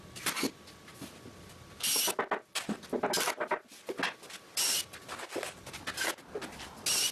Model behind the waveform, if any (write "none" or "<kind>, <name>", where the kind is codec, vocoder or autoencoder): none